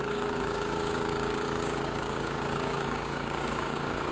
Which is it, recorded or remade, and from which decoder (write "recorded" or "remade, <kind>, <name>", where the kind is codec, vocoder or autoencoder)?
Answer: remade, codec, DAC